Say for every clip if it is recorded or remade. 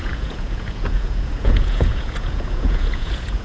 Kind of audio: remade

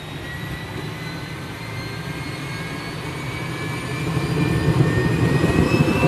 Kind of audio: remade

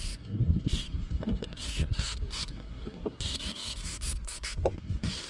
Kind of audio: remade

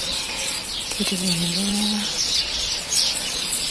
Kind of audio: remade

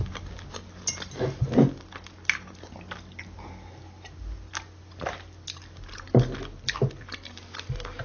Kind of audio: recorded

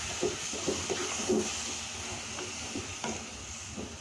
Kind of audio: recorded